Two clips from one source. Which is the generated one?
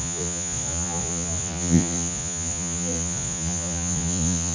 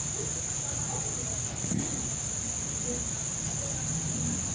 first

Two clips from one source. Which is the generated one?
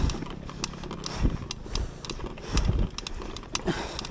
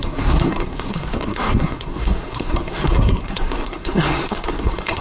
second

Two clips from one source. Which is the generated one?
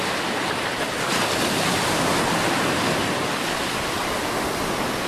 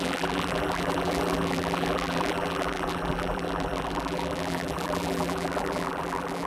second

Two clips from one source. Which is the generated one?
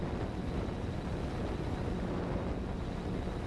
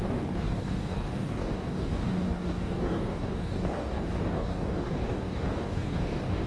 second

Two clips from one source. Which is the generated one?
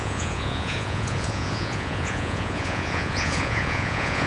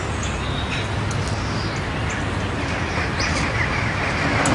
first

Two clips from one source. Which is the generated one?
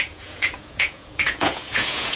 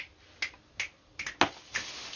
first